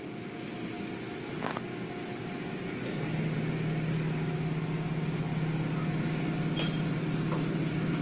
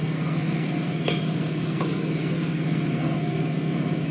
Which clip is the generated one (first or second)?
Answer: second